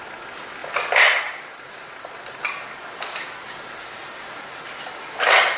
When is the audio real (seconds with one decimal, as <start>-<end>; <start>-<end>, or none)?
0.0-5.6